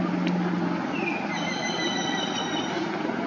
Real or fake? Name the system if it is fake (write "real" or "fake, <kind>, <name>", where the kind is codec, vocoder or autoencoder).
real